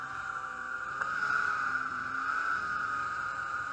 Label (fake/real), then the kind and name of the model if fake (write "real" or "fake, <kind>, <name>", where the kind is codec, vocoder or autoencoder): fake, vocoder, BigVGAN v2